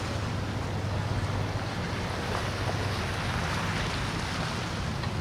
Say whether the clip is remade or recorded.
recorded